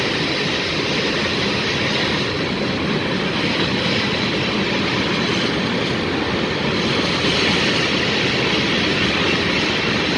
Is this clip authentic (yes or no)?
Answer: yes